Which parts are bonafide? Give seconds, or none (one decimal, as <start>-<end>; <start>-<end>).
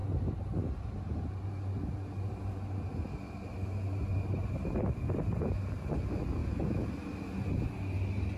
0.0-8.4